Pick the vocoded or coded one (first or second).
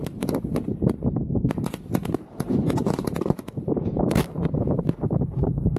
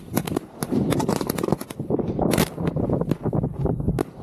first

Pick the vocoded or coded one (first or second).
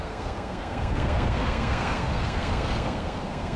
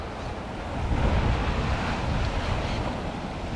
first